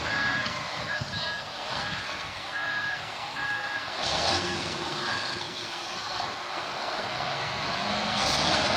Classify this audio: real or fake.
fake